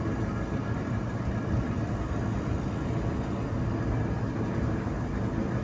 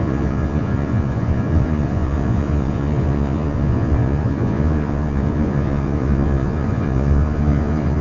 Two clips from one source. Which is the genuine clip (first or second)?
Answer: first